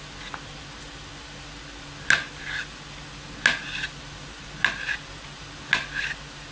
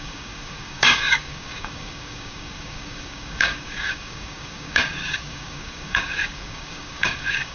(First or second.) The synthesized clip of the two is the second